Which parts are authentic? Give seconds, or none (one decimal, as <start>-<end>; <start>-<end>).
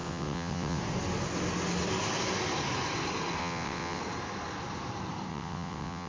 0.8-3.4; 4.0-5.3